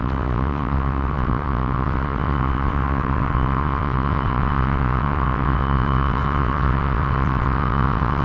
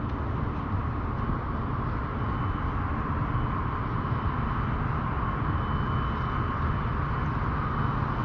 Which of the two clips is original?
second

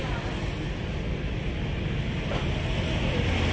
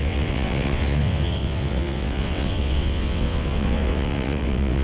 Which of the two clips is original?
first